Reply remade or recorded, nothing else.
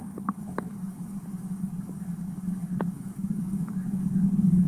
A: remade